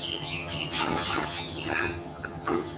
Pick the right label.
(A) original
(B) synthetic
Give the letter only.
B